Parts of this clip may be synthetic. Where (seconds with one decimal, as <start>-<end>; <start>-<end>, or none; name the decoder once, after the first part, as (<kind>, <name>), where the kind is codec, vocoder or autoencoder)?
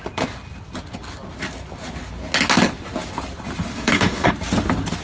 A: 3.7-4.3 (codec, DAC)